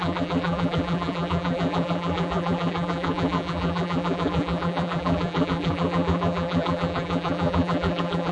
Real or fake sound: fake